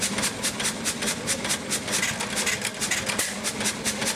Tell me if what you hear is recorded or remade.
recorded